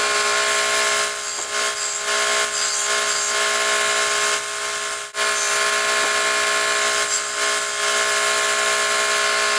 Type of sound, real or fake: real